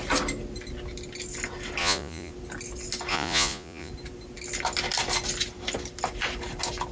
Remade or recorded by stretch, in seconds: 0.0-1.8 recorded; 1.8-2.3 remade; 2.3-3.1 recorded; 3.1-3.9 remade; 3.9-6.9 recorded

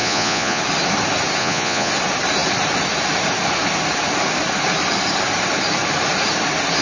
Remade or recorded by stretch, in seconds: 0.0-0.6 remade; 0.6-1.4 recorded; 1.4-1.9 remade; 1.9-6.8 recorded